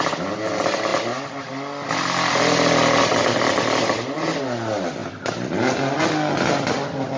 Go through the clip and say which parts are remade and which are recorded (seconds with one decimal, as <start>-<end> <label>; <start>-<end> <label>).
0.0-7.2 recorded